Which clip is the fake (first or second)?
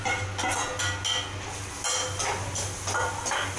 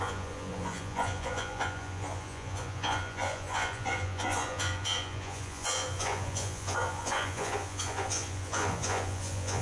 second